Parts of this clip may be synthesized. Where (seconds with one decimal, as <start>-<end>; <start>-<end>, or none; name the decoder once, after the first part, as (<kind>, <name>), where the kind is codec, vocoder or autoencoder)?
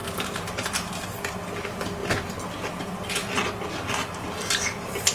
0.0-1.1 (vocoder, BigVGAN v2)